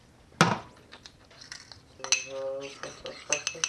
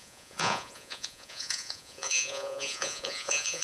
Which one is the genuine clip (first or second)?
first